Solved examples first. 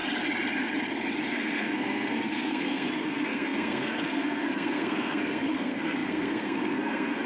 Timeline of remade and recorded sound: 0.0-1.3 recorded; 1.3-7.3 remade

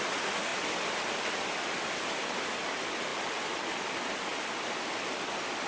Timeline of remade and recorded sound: 0.0-5.7 recorded

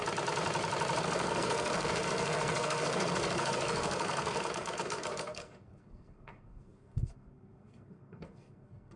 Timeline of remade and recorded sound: 0.0-1.0 recorded; 1.0-9.0 remade

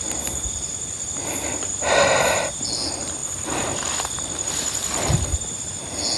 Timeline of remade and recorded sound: 0.0-6.2 recorded

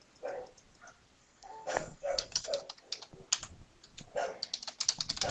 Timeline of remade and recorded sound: 0.0-1.2 recorded; 1.2-2.6 remade; 2.6-5.3 recorded

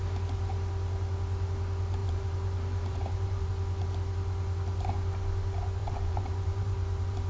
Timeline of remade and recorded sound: 0.0-2.0 recorded; 2.0-3.5 remade; 3.5-5.8 recorded; 5.8-7.3 remade

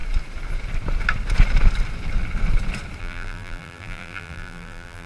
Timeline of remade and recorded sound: 0.0-3.0 recorded; 3.0-5.1 remade

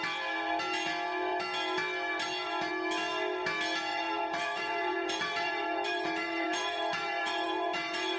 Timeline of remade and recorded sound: 0.0-3.9 recorded; 3.9-8.2 remade